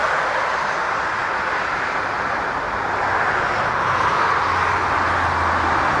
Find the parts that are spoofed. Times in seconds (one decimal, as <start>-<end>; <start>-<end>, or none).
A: none